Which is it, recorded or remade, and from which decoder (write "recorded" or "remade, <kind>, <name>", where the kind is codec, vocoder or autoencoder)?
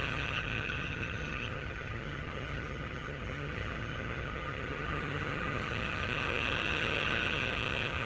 remade, vocoder, HiFi-GAN